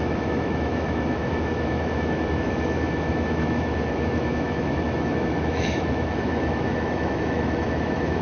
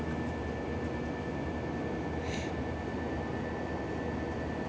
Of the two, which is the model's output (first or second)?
first